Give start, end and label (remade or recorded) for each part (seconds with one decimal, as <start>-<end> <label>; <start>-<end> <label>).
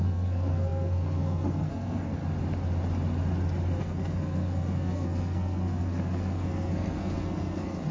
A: 0.0-2.2 remade; 2.2-3.8 recorded; 3.8-7.9 remade